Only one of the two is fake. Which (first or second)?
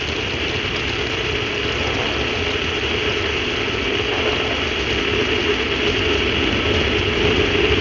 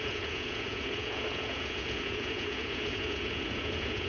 second